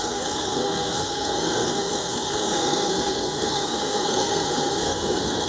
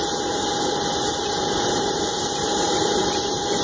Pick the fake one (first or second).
first